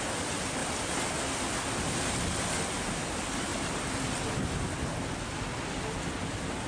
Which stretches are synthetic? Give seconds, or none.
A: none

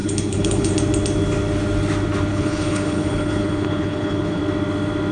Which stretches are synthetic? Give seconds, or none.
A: 0.0-0.7; 2.3-4.4

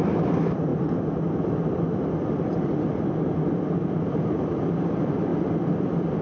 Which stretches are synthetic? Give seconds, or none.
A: 0.0-0.7; 3.3-5.3

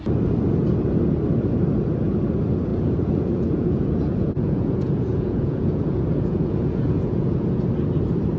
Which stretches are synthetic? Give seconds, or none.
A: 2.7-7.6

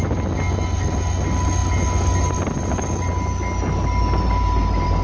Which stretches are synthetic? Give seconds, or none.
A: none